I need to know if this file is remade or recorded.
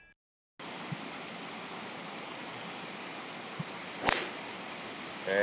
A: recorded